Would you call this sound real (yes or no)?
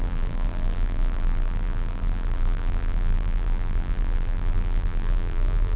no